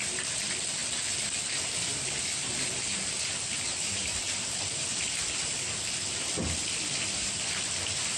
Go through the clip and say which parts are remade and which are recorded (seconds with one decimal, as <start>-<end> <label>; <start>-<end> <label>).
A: 0.0-8.2 recorded